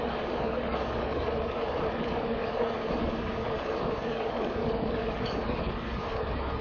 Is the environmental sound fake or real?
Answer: fake